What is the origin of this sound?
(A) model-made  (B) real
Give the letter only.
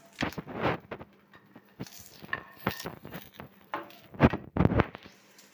A